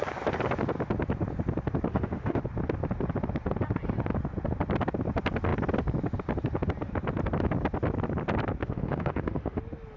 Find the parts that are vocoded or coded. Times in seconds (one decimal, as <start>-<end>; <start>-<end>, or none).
1.9-2.4; 8.6-9.6